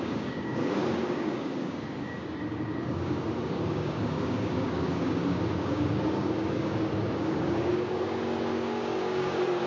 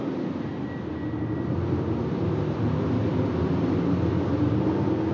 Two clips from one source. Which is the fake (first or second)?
first